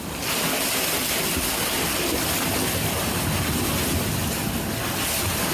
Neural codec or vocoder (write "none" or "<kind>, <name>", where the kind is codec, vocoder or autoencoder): none